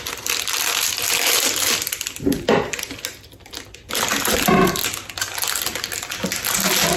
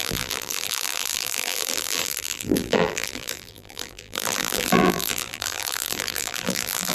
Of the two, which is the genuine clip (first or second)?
first